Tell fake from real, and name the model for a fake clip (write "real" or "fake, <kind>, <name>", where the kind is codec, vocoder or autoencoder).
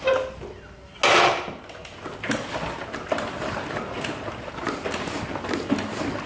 real